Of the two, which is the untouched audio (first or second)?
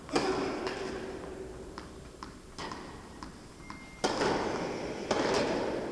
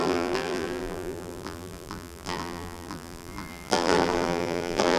first